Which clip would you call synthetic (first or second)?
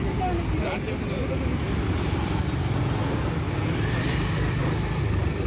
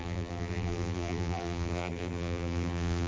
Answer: second